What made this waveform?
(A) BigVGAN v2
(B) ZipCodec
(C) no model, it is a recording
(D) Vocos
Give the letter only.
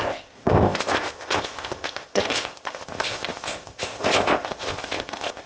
B